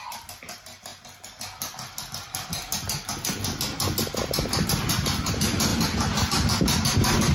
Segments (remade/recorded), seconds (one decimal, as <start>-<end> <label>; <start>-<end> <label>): 0.0-7.3 recorded